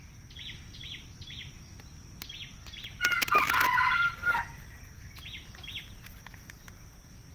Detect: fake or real real